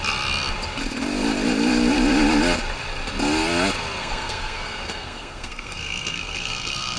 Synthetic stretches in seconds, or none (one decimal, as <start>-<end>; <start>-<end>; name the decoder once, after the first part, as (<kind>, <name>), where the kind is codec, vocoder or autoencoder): 4.0-7.0 (codec, SNAC)